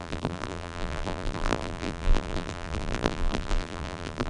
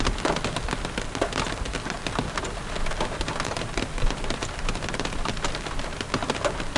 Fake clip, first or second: first